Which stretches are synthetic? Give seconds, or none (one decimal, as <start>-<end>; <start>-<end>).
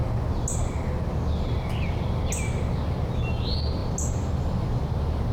none